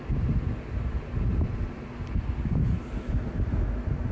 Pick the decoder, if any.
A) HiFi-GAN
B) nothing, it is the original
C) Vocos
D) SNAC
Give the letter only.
B